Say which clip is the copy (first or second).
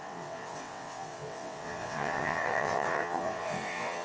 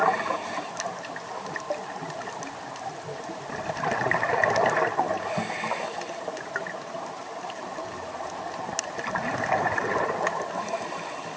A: first